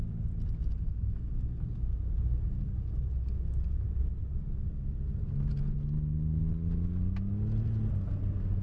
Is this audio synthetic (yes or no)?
no